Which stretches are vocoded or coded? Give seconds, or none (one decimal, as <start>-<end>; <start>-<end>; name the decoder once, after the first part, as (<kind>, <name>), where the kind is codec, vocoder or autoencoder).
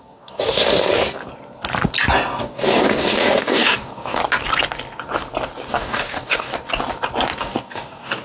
0.0-0.9 (codec, DAC); 2.4-4.2; 5.7-6.5; 7.4-8.2